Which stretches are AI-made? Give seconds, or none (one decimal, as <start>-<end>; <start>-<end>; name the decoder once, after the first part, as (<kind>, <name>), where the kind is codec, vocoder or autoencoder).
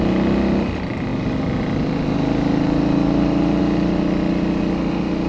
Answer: none